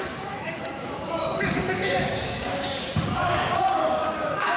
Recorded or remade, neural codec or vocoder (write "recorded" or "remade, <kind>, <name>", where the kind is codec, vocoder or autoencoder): remade, codec, DAC